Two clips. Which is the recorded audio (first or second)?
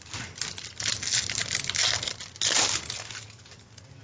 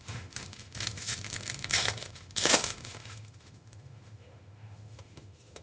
first